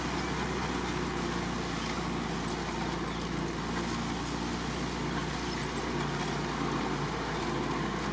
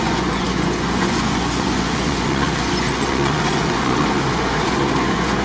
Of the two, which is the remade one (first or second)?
second